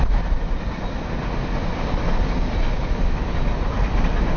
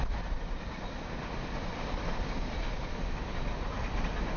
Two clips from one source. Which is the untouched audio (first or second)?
first